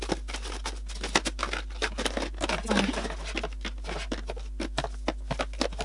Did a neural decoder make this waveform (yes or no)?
no